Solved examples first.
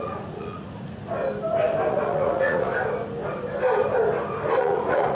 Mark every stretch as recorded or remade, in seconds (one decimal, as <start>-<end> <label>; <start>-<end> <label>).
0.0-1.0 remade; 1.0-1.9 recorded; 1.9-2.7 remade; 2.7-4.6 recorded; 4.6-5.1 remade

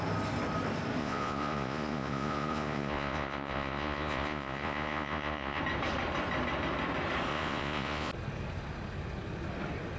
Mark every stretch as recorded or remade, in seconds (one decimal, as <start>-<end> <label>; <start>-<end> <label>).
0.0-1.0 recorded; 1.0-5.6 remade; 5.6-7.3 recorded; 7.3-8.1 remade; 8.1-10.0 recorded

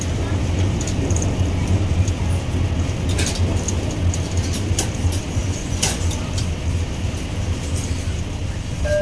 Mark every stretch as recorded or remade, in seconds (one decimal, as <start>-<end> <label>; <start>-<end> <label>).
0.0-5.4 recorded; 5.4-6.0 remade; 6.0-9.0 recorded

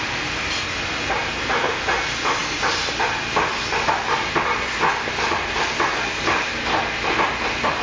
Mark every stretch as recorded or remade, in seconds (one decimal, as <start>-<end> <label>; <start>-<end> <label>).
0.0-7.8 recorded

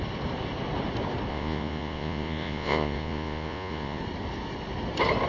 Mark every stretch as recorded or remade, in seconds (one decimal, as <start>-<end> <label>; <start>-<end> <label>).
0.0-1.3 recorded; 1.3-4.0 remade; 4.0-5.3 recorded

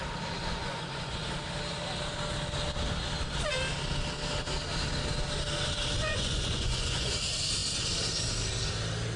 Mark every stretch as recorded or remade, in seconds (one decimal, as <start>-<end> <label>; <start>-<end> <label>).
0.0-0.4 recorded; 0.4-1.3 remade; 1.3-6.0 recorded; 6.0-7.1 remade; 7.1-9.2 recorded

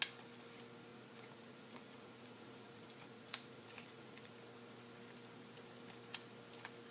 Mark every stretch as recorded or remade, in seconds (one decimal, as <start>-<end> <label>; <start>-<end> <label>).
0.0-0.9 recorded; 0.9-4.3 remade; 4.3-6.9 recorded